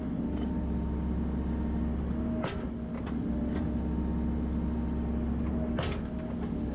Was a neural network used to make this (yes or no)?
no